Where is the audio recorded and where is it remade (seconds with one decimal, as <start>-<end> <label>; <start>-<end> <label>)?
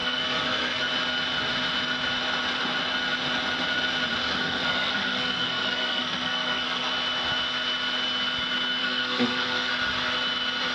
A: 0.0-0.8 remade; 0.8-4.2 recorded; 4.2-6.9 remade; 6.9-8.8 recorded; 8.8-9.7 remade; 9.7-10.7 recorded